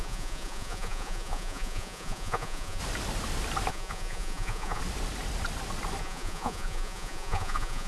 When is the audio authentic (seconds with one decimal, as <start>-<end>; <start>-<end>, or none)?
2.8-3.7; 4.8-6.0